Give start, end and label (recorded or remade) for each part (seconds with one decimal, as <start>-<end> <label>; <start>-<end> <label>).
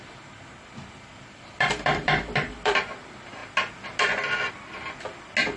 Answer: 0.0-1.1 recorded; 1.1-2.8 remade; 2.8-5.6 recorded